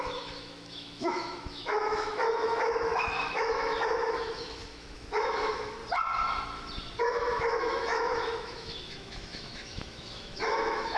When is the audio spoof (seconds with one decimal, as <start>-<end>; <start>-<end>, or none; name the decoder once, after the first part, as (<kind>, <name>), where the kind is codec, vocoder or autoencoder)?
0.0-5.8 (autoencoder, DAC-VAE); 7.0-11.0